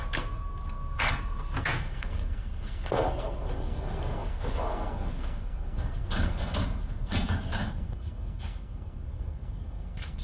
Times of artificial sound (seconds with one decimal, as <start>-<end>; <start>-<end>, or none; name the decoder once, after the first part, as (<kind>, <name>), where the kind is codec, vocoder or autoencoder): 0.0-10.2 (codec, SNAC)